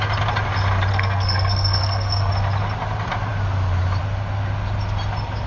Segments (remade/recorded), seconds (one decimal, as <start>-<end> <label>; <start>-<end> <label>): 0.0-0.9 recorded; 0.9-2.3 remade; 2.3-5.5 recorded